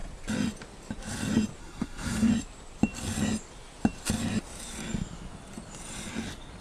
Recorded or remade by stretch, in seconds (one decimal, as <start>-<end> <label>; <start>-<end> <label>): 0.0-1.6 recorded; 1.6-2.3 remade; 2.3-6.6 recorded